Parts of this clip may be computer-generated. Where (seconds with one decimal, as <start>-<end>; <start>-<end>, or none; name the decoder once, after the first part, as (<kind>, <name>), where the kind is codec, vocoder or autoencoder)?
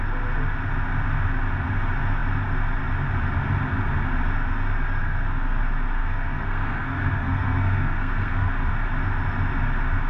5.0-5.6 (codec, SNAC); 6.0-8.5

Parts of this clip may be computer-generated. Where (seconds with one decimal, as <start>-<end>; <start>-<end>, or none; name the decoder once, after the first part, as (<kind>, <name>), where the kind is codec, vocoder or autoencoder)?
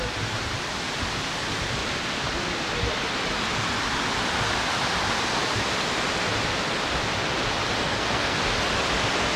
7.8-8.4 (codec, SNAC)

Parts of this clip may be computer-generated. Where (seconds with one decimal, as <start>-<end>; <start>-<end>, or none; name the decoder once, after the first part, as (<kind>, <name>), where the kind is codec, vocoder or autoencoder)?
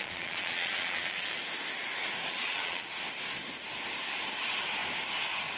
0.0-1.4 (vocoder, Vocos); 2.3-2.9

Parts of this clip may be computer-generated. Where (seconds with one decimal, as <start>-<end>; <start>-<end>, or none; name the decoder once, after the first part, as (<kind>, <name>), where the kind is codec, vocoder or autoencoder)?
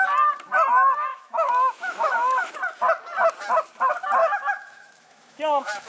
1.1-2.5 (autoencoder, DAC-VAE); 4.2-5.9